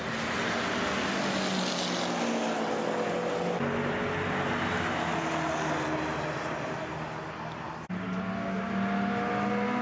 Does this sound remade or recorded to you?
recorded